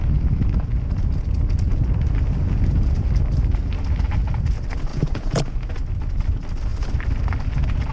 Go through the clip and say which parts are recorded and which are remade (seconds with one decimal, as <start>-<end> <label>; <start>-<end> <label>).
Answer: 0.0-4.9 recorded; 4.9-5.7 remade; 5.7-7.9 recorded